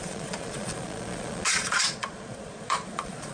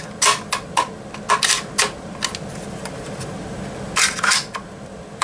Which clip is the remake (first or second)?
first